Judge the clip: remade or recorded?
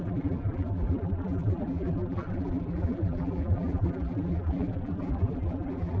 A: remade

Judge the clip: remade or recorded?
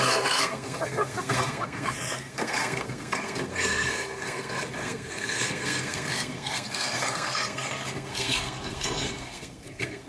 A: remade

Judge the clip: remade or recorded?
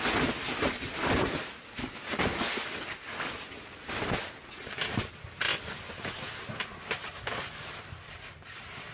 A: recorded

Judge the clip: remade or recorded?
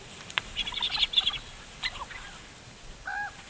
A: recorded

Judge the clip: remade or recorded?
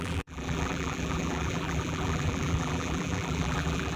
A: remade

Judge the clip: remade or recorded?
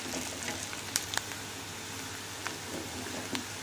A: recorded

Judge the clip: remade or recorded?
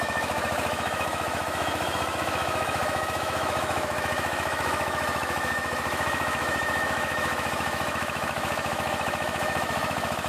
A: remade